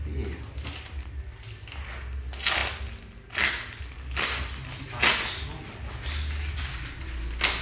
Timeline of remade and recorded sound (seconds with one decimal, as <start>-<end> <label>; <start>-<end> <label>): 0.0-7.6 recorded